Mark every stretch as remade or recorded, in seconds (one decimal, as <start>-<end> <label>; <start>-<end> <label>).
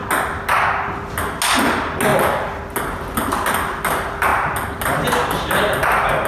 0.0-6.3 recorded